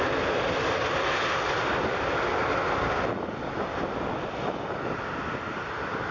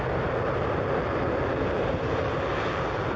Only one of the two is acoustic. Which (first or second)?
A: first